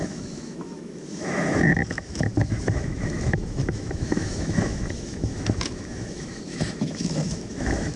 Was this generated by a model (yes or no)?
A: yes